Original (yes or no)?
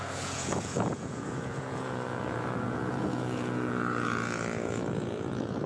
no